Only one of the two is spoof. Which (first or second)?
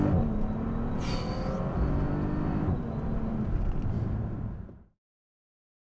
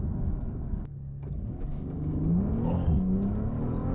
second